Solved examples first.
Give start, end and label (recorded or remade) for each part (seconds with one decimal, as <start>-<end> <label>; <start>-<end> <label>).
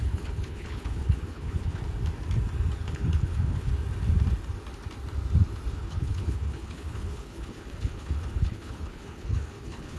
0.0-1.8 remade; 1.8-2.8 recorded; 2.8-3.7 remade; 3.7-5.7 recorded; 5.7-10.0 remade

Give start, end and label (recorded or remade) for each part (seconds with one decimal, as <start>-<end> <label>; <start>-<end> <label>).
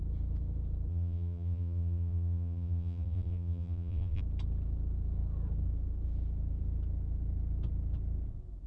0.0-0.9 recorded; 0.9-4.2 remade; 4.2-8.7 recorded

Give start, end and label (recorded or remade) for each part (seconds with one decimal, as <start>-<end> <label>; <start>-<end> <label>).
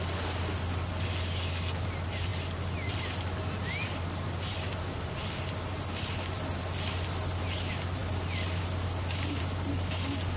0.0-10.4 recorded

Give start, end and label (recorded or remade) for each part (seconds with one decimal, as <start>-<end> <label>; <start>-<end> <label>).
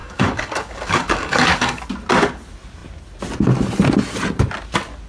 0.0-1.8 remade; 1.8-5.1 recorded